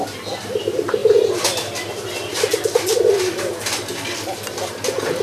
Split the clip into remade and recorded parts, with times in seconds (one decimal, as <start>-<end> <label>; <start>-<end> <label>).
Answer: 0.0-5.2 recorded